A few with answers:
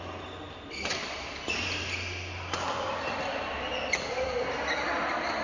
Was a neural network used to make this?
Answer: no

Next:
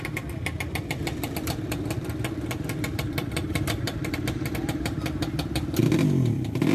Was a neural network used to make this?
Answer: yes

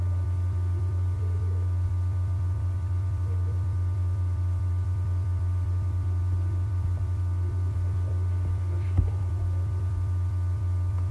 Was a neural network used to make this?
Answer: yes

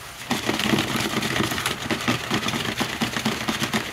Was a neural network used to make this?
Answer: no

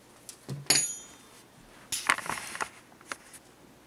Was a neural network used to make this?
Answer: no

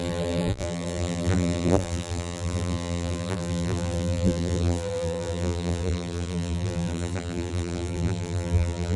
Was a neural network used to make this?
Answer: yes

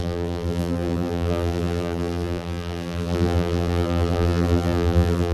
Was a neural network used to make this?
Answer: yes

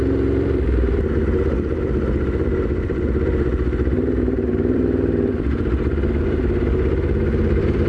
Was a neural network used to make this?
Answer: yes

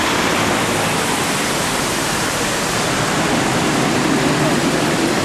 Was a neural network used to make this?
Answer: yes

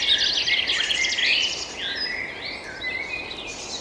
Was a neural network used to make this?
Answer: no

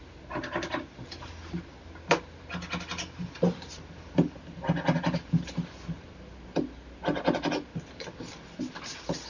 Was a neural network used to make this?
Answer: no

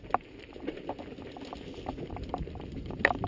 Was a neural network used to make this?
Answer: no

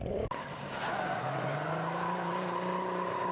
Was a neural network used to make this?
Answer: yes